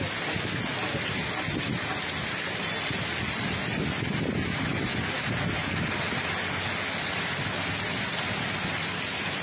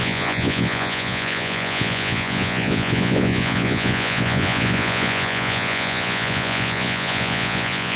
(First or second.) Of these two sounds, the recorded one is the first